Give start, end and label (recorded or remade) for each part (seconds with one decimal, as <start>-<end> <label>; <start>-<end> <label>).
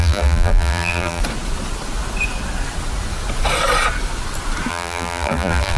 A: 0.0-1.2 remade; 1.2-4.7 recorded; 4.7-5.8 remade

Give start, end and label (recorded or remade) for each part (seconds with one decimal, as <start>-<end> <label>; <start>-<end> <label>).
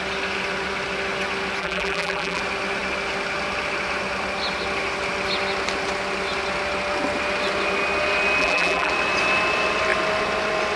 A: 0.0-1.6 recorded; 1.6-2.4 remade; 2.4-8.4 recorded; 8.4-8.9 remade; 8.9-10.8 recorded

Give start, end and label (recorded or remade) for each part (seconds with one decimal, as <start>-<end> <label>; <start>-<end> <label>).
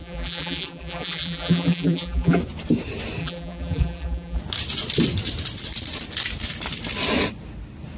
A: 0.0-2.4 remade; 2.4-3.2 recorded; 3.2-4.4 remade; 4.4-8.0 recorded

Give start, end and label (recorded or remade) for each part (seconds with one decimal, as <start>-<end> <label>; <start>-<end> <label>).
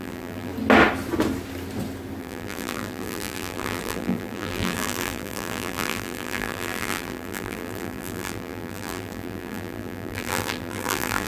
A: 0.0-0.5 remade; 0.5-2.2 recorded; 2.2-11.3 remade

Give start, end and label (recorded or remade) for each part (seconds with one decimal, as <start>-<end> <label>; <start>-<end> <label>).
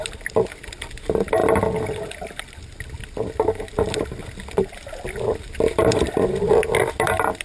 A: 0.0-7.4 recorded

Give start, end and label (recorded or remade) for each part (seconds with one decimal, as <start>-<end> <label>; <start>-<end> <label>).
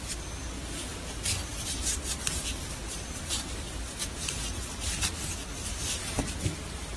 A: 0.0-0.9 recorded; 0.9-5.1 remade; 5.1-7.0 recorded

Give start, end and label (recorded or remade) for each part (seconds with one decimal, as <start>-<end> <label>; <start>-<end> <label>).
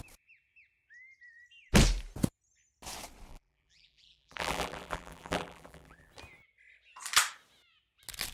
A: 0.0-3.3 recorded; 3.3-6.1 remade; 6.1-8.3 recorded